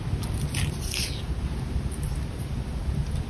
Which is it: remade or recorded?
recorded